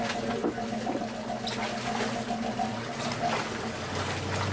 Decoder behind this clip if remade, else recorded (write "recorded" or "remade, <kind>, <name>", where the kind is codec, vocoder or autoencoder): recorded